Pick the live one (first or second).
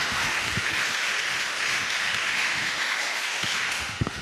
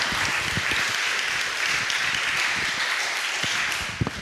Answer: second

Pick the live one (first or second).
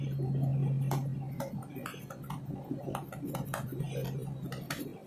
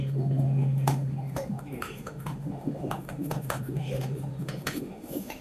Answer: first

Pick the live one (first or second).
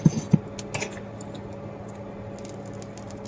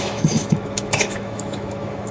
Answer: first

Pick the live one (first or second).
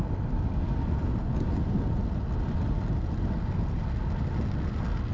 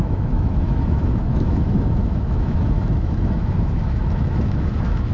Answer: first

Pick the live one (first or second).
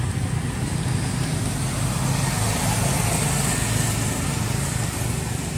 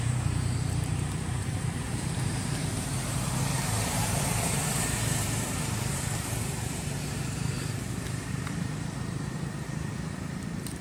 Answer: first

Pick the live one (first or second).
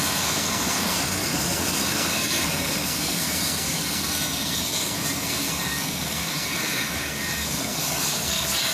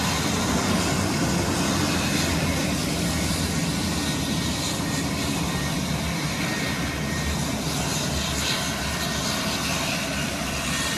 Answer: second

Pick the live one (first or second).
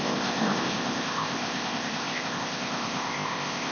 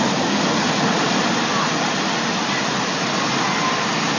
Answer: second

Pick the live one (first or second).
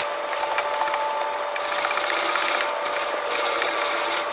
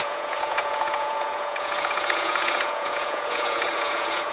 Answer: first